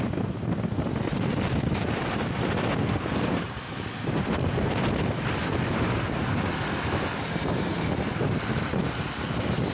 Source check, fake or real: real